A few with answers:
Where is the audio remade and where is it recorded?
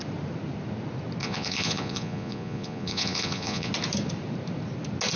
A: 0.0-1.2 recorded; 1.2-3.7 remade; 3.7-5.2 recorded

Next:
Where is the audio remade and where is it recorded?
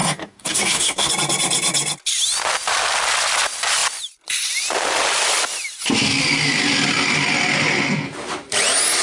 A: 0.0-1.1 remade; 1.1-9.0 recorded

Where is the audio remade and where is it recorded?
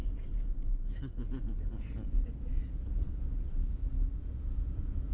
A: 0.0-3.1 recorded; 3.1-5.1 remade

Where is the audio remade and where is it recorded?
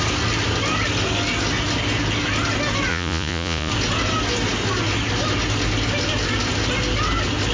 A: 0.0-2.9 recorded; 2.9-3.7 remade; 3.7-7.5 recorded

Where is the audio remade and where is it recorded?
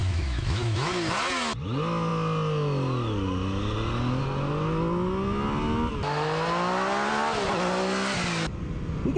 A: 0.0-0.9 remade; 0.9-9.2 recorded